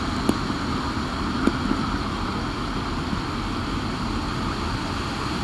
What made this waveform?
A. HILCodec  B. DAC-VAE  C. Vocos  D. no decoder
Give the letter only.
D